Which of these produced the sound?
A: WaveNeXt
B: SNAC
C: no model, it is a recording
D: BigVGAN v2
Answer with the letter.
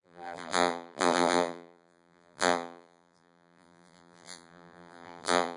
D